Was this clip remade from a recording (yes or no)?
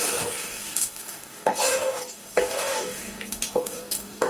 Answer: yes